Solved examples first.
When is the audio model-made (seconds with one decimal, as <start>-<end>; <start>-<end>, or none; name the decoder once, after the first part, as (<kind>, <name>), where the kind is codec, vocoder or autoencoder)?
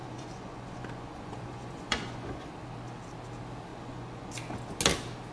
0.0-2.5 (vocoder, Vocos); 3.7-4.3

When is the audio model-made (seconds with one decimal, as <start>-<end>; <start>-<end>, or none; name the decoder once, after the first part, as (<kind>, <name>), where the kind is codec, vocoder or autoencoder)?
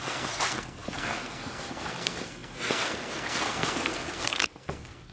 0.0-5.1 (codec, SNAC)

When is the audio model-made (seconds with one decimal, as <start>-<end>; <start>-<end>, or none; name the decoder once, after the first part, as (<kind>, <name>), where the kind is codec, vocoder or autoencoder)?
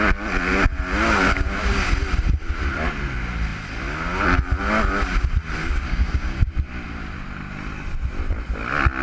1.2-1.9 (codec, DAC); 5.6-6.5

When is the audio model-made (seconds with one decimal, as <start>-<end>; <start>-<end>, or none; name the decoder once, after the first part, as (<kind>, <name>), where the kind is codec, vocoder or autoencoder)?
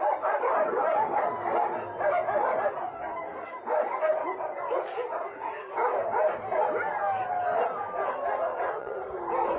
8.5-9.0 (vocoder, WaveNeXt)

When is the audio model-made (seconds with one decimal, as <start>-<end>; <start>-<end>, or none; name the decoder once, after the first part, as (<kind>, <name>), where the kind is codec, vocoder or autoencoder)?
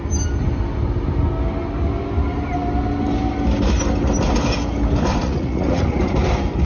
5.2-6.0 (vocoder, Vocos)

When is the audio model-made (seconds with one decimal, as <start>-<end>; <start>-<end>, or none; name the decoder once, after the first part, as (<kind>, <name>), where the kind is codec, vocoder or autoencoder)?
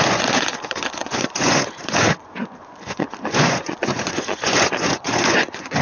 0.0-5.8 (vocoder, Vocos)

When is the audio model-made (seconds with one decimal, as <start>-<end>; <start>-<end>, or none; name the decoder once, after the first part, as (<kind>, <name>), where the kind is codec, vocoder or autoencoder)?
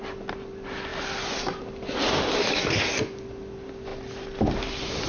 none